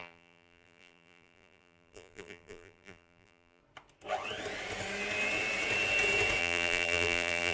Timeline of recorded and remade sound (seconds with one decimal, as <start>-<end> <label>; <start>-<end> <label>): 0.0-3.6 remade; 3.6-6.4 recorded; 6.4-7.5 remade